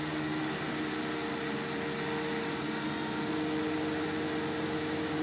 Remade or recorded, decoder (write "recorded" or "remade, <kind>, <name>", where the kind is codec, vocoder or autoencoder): recorded